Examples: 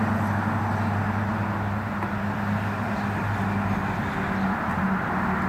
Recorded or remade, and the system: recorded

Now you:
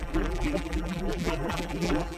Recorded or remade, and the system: remade, vocoder, BigVGAN v2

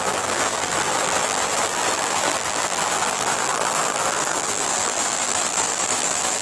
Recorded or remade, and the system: remade, vocoder, BigVGAN v2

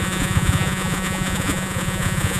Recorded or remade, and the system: remade, vocoder, Vocos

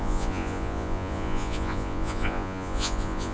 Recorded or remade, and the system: remade, vocoder, Vocos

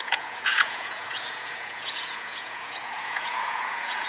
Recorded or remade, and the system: remade, vocoder, Vocos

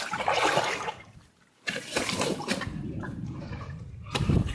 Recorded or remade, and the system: remade, vocoder, BigVGAN v2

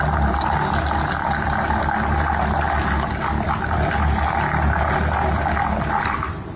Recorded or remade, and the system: recorded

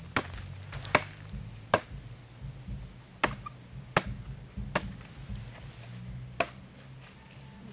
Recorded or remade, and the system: recorded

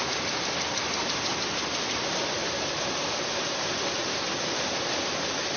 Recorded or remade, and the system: recorded